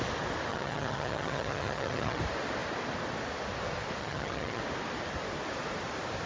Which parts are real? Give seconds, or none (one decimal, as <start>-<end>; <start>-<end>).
0.0-0.5; 2.2-4.0; 4.6-6.3